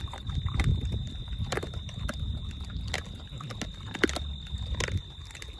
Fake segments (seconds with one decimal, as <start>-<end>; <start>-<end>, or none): none